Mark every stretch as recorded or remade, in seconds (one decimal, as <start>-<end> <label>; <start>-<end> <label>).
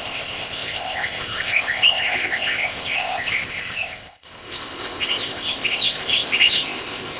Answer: 0.0-7.2 remade